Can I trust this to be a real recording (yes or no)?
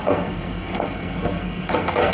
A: no